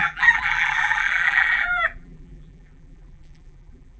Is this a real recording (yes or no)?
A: no